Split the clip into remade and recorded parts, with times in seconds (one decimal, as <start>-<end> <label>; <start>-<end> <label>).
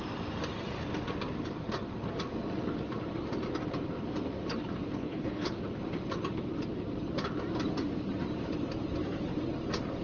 0.0-5.0 recorded; 5.0-5.6 remade; 5.6-10.0 recorded